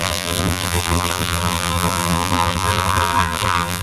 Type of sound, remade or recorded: remade